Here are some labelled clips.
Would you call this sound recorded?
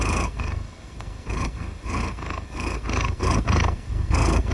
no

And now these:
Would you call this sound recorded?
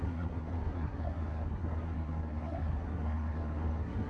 no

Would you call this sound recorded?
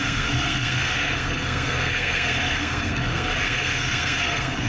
no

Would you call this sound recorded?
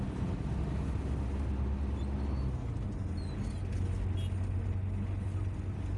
yes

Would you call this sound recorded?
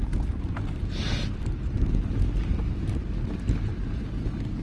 yes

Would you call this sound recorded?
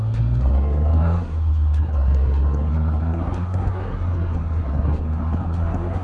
no